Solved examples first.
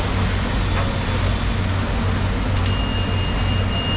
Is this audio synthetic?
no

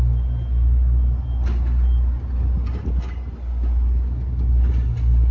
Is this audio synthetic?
no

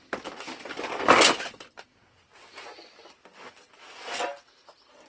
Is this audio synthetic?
no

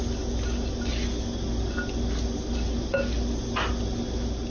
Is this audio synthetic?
no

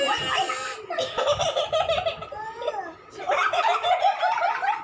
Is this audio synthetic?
no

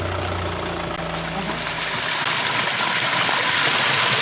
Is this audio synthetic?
no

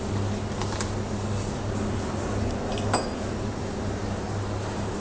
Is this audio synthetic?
no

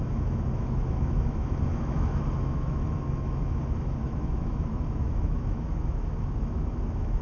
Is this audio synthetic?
yes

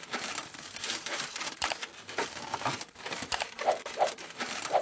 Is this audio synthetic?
yes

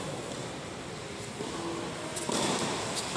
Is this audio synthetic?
no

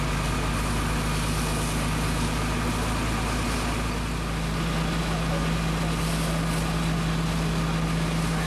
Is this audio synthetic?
no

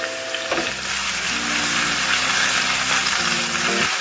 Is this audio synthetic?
no